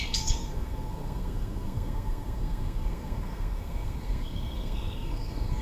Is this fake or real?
fake